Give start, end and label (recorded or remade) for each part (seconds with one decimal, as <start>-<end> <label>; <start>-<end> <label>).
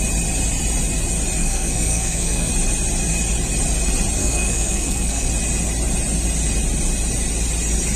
0.0-1.4 recorded; 1.4-2.5 remade; 2.5-4.2 recorded; 4.2-5.3 remade; 5.3-8.0 recorded